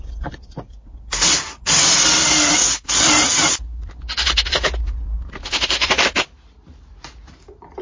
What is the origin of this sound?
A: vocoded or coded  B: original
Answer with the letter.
B